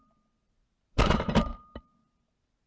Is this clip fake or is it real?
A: fake